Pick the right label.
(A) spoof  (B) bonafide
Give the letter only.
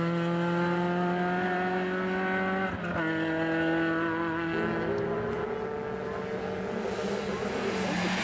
B